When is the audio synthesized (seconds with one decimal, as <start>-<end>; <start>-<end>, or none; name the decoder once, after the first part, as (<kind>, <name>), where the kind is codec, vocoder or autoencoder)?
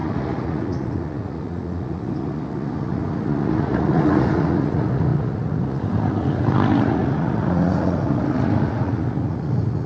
0.0-9.9 (vocoder, Vocos)